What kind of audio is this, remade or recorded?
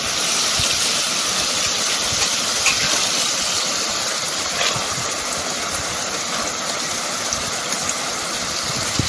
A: recorded